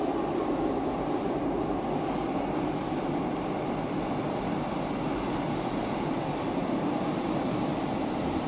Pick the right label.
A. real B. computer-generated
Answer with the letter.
A